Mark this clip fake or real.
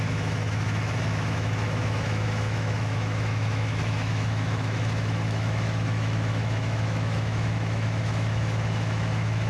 fake